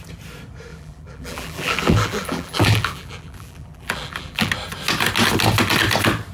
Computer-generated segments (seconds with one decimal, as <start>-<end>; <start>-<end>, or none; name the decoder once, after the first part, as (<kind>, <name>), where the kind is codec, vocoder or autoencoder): 0.7-4.5 (vocoder, BigVGAN v2)